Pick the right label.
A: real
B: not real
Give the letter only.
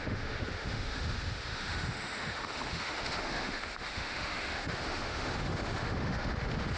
B